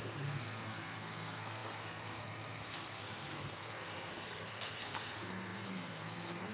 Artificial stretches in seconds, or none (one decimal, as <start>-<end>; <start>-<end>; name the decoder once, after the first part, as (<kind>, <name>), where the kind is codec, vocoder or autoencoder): 0.0-6.5 (codec, SNAC)